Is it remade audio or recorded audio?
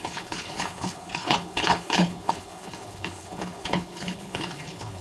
remade